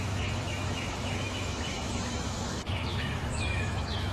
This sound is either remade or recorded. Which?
remade